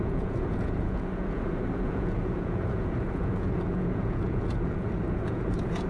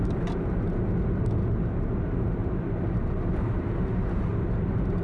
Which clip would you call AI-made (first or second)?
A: first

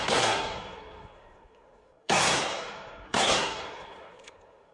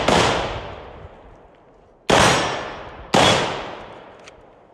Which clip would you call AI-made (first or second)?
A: first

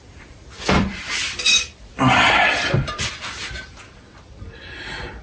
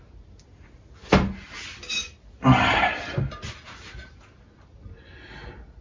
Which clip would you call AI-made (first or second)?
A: first